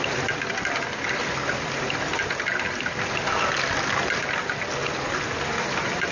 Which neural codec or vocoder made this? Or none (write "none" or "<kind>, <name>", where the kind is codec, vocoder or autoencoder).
none